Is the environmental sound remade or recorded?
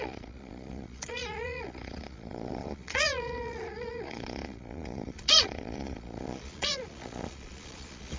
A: remade